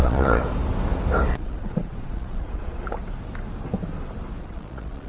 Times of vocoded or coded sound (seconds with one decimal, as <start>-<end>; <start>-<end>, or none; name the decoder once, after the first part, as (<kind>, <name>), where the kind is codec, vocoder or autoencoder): 0.0-0.4 (vocoder, Vocos); 1.3-2.8; 4.4-5.1